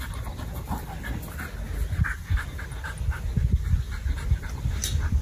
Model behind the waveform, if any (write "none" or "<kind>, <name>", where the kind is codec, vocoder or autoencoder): none